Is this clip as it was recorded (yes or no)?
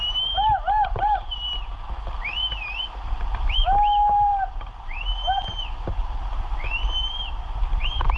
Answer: yes